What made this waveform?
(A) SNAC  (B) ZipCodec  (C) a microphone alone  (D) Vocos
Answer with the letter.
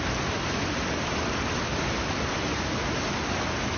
C